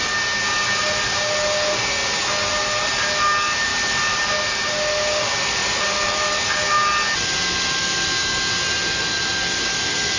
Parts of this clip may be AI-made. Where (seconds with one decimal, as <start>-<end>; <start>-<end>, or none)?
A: 3.7-4.3; 5.6-6.5

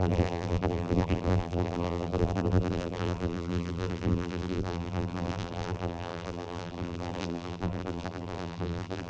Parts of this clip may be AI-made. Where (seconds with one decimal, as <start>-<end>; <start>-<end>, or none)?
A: 0.0-9.1

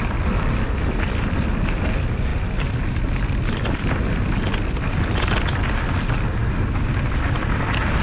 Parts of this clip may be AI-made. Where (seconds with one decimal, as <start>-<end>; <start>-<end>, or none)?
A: 2.3-5.3

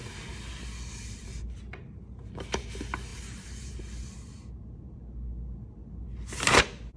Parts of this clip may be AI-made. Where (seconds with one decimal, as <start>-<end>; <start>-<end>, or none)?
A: 1.2-2.4; 3.1-3.8

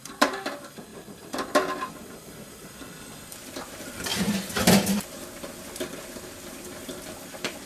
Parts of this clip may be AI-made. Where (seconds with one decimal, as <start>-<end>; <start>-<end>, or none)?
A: 0.0-7.7

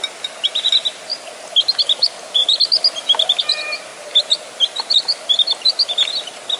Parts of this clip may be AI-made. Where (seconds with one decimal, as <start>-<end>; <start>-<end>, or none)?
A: none

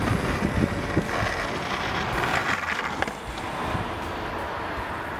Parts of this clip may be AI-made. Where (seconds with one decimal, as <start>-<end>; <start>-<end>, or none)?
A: 2.4-3.4